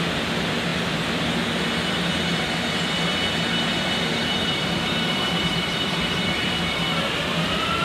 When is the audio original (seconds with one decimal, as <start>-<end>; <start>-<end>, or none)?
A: 0.0-4.4; 6.6-7.8